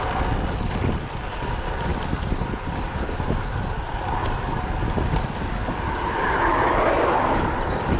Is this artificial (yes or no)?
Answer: no